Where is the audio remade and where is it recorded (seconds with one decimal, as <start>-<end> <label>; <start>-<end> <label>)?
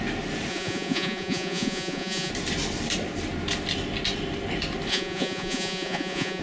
0.0-0.5 recorded; 0.5-2.3 remade; 2.3-4.9 recorded; 4.9-6.4 remade